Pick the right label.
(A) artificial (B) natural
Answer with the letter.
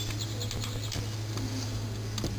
B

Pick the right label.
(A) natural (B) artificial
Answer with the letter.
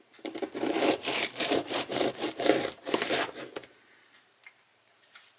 B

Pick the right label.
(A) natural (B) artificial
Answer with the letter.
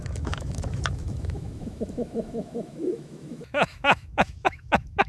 B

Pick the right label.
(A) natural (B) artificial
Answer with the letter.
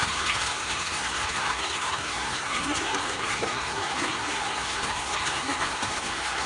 B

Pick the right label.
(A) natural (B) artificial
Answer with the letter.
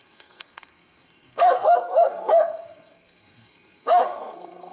B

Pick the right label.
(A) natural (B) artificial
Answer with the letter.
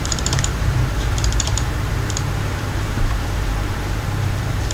B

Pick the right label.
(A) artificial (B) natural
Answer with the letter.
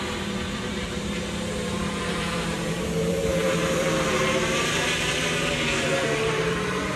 A